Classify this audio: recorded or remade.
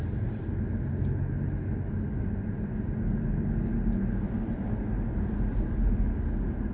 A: recorded